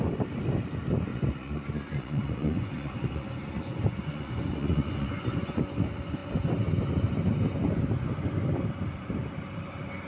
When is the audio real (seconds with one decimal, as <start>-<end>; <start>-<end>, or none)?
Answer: 0.0-1.1; 5.6-10.1